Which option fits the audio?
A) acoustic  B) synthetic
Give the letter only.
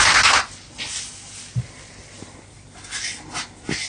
A